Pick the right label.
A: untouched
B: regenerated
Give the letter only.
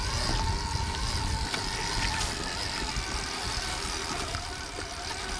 A